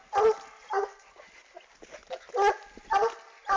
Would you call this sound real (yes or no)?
yes